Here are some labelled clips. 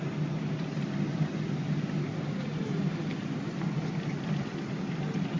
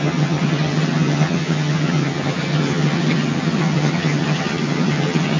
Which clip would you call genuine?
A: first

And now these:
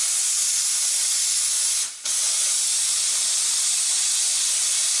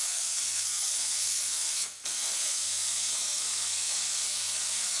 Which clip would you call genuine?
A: first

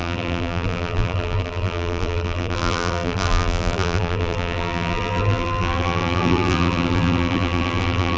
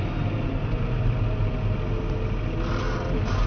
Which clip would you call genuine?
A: second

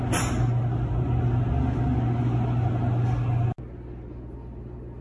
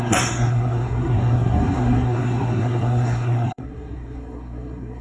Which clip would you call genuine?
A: first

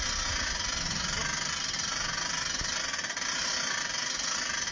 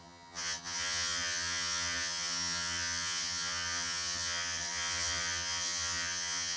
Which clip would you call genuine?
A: first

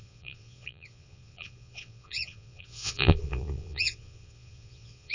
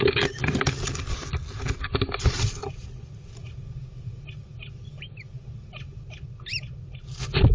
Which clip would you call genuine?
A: second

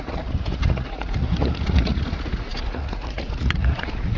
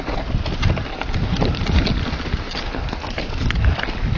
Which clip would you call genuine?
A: second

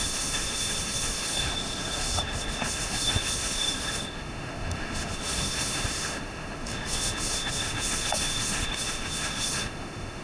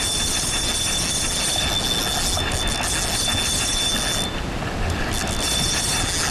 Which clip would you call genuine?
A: second